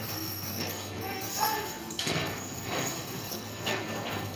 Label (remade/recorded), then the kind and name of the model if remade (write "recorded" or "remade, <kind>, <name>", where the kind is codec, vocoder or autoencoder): remade, codec, SNAC